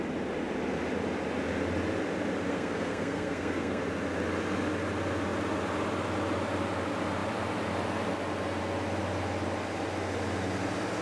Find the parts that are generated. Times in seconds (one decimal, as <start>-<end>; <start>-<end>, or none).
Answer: 2.5-3.8

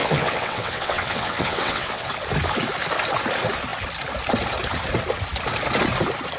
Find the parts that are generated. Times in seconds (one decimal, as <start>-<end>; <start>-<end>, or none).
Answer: 0.0-2.1

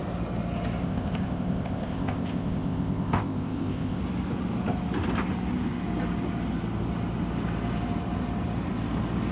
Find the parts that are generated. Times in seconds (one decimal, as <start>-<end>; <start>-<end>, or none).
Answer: 0.8-4.0

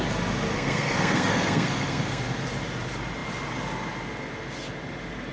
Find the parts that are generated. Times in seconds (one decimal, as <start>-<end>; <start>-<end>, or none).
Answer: 0.5-2.2

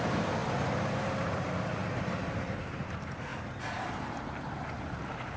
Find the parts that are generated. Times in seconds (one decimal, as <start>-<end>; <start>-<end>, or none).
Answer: 0.0-3.3; 4.7-5.4